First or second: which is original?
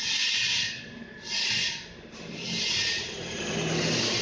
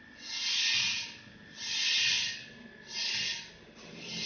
second